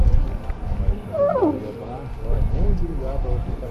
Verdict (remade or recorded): recorded